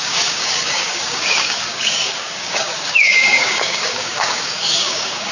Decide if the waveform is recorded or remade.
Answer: remade